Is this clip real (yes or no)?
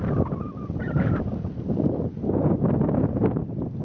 yes